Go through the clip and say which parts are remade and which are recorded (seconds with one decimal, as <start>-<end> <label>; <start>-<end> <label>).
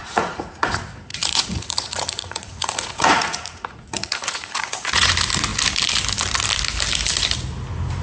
0.0-0.7 remade; 0.7-1.1 recorded; 1.1-5.1 remade; 5.1-8.0 recorded